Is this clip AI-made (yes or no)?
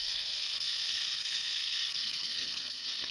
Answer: yes